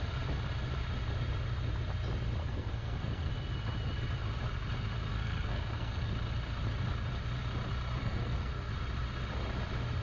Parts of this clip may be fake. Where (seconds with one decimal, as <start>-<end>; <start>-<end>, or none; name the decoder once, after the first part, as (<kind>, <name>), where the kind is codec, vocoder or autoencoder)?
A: 2.4-3.3 (codec, SNAC); 5.1-6.1; 8.0-8.7